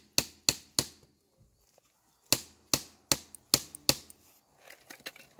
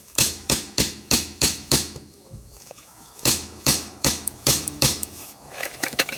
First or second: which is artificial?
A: second